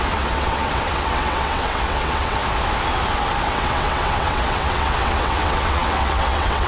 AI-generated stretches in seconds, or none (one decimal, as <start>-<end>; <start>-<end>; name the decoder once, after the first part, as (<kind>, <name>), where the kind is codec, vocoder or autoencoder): 0.0-2.4 (vocoder, WaveNeXt); 3.5-6.7